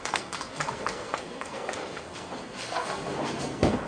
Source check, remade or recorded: remade